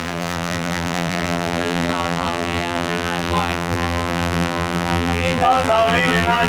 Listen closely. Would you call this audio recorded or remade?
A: remade